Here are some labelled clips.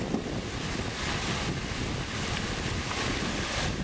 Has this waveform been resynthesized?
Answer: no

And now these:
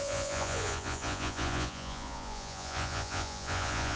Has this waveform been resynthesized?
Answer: yes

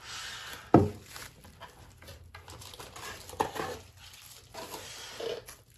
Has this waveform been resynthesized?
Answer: no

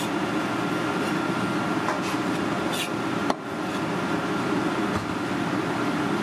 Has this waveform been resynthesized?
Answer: no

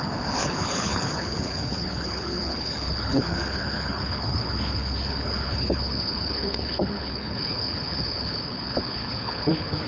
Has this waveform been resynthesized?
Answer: yes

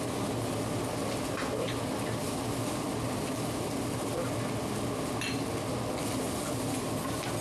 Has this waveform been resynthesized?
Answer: no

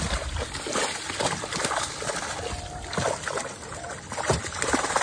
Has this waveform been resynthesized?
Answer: no